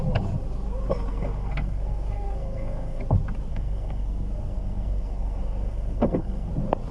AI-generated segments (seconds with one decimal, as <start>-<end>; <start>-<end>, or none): 1.1-3.0; 3.5-6.5